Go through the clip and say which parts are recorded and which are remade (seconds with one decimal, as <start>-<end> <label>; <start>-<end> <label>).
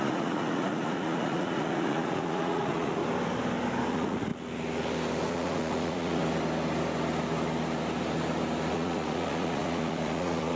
0.0-3.0 remade; 3.0-3.9 recorded; 3.9-4.3 remade; 4.3-5.3 recorded; 5.3-6.2 remade; 6.2-8.7 recorded; 8.7-10.6 remade